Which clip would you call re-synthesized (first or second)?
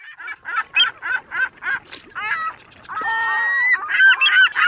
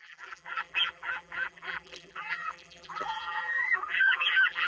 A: second